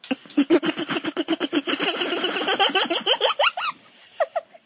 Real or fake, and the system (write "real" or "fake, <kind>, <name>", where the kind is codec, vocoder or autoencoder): fake, vocoder, BigVGAN v2